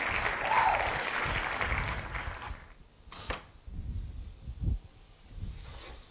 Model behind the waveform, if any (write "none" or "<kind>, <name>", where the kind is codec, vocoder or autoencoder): none